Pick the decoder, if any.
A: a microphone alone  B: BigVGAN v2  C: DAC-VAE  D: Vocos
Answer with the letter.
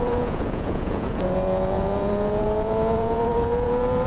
D